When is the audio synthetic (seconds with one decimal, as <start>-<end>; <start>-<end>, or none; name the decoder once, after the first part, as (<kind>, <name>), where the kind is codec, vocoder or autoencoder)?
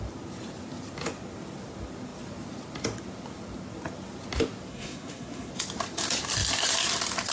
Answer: 4.7-5.5 (codec, SNAC)